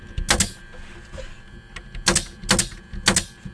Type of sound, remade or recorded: recorded